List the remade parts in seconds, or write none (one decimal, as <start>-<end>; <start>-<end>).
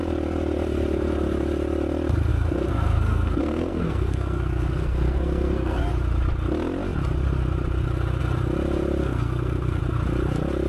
2.3-5.8; 9.0-9.8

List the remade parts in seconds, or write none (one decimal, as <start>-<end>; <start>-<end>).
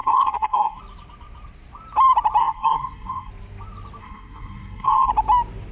0.0-0.8; 2.4-3.3; 4.0-5.1